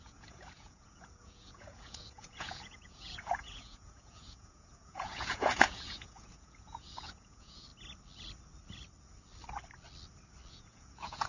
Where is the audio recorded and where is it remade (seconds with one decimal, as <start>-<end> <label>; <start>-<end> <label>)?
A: 0.0-7.7 remade; 7.7-10.5 recorded; 10.5-11.3 remade